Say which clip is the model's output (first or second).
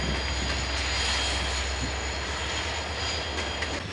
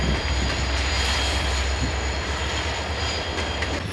second